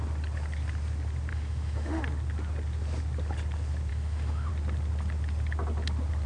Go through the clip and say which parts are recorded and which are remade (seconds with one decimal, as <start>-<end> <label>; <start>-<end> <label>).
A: 0.0-1.3 recorded; 1.3-2.0 remade; 2.0-3.9 recorded; 3.9-4.5 remade; 4.5-6.3 recorded